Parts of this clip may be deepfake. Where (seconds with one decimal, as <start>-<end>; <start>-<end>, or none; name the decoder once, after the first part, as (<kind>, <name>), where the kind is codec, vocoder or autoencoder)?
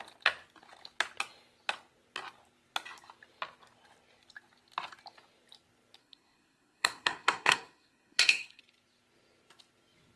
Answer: 6.0-8.6 (codec, SNAC)